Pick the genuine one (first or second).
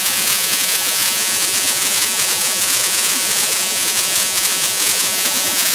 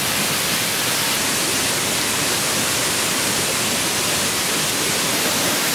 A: second